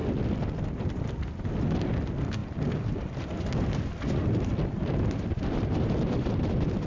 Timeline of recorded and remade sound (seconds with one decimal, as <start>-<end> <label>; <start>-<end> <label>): 0.0-2.4 recorded; 2.4-6.5 remade; 6.5-6.9 recorded